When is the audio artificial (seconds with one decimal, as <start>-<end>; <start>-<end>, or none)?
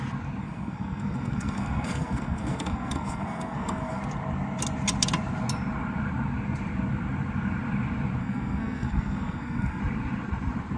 0.4-4.0; 8.2-9.8